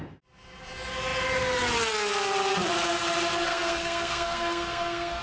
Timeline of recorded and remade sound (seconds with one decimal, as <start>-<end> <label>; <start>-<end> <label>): 0.0-3.5 recorded; 3.5-5.2 remade